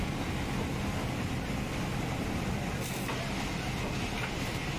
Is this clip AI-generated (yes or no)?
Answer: no